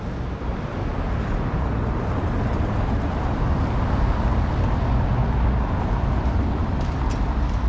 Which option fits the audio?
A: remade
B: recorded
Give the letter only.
B